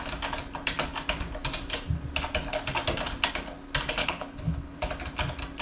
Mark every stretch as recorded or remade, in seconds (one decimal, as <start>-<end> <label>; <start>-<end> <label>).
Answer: 0.0-4.0 recorded; 4.0-4.8 remade; 4.8-5.6 recorded